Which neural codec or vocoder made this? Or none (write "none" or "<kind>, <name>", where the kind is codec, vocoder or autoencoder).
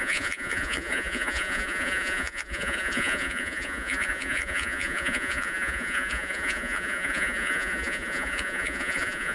vocoder, Vocos